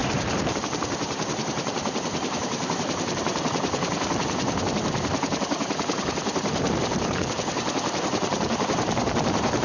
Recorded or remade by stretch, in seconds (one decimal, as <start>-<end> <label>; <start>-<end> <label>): 0.0-9.6 remade